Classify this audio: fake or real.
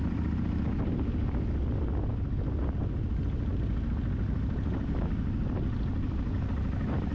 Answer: real